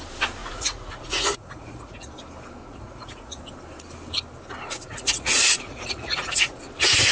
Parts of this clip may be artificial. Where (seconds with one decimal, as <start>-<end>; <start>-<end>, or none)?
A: 0.4-2.1; 2.6-3.4; 4.9-6.6